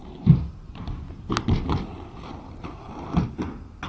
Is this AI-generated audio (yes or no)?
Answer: no